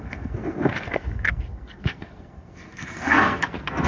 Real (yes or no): no